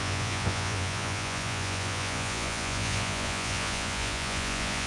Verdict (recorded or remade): remade